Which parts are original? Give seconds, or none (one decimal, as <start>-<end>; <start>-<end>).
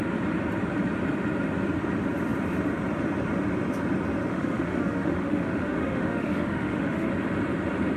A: 0.0-4.3; 7.1-8.0